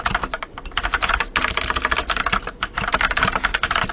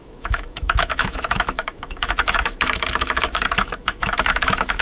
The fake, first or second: second